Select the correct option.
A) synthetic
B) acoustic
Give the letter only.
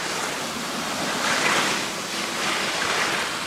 B